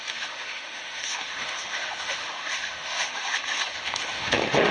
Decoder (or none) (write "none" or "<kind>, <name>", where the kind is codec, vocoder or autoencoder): autoencoder, DAC-VAE